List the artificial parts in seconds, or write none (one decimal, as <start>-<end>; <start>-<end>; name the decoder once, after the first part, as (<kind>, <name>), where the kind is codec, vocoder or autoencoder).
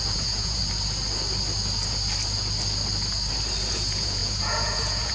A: 0.0-0.6 (vocoder, Vocos); 3.7-5.1